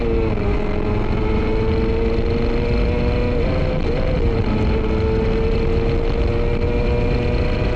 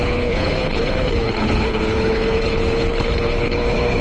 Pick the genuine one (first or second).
first